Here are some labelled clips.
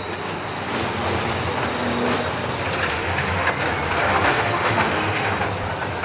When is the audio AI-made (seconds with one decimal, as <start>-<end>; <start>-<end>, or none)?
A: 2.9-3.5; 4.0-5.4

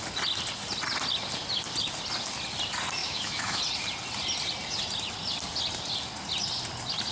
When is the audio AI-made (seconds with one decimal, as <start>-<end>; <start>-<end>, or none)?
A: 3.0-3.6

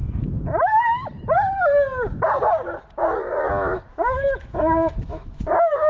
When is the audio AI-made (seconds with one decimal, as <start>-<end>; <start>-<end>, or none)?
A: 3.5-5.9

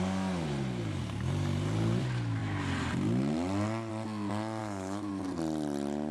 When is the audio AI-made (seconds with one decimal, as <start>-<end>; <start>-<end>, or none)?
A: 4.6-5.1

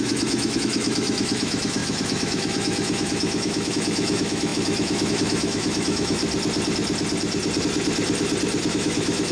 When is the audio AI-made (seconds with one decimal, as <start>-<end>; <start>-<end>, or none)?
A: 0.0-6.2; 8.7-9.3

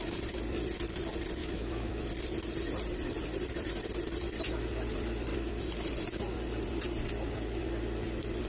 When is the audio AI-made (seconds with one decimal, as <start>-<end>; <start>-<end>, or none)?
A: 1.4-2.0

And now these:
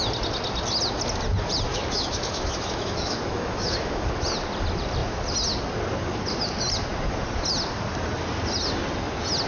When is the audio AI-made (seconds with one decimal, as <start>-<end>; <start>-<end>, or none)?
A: 1.7-4.1